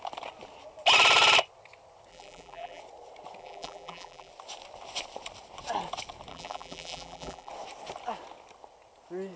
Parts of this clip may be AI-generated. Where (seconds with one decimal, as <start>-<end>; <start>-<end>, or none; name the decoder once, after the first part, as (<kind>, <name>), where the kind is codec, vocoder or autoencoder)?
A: 2.1-2.8 (vocoder, BigVGAN v2); 3.4-4.3; 6.3-7.5